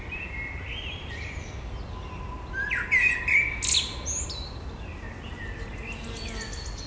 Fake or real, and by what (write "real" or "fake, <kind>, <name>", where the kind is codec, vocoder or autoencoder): real